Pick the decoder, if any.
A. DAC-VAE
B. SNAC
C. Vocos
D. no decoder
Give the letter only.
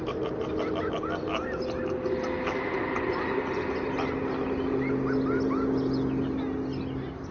D